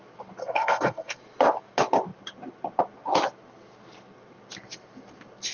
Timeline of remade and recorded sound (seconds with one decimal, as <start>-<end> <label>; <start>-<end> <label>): 0.0-0.4 recorded; 0.4-1.2 remade; 1.2-5.5 recorded